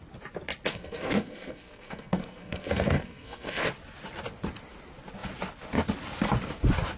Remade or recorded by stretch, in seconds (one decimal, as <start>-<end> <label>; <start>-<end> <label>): 0.0-0.7 recorded; 0.7-3.7 remade; 3.7-7.0 recorded